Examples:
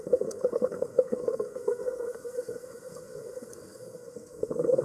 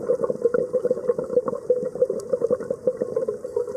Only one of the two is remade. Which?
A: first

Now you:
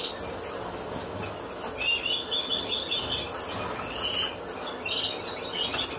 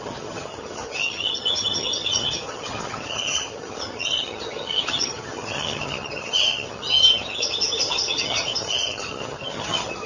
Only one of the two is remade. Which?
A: second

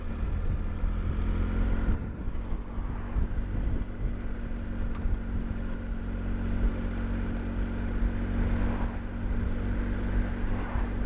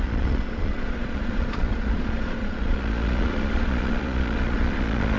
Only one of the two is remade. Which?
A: second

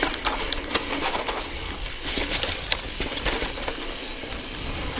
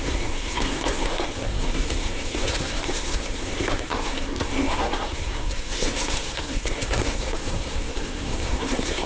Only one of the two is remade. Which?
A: second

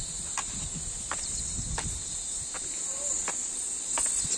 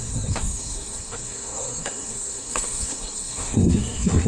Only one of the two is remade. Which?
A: second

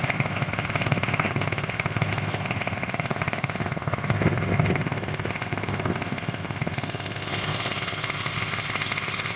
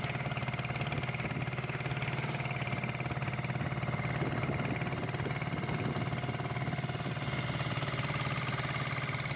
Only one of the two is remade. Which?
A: first